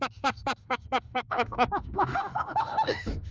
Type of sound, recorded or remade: remade